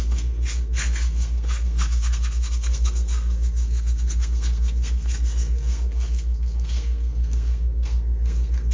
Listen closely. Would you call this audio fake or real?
fake